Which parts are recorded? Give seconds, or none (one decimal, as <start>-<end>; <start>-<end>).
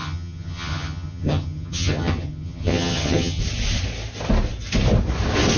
3.4-5.6